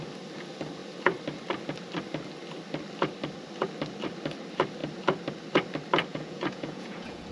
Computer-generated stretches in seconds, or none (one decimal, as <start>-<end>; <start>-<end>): 6.1-7.3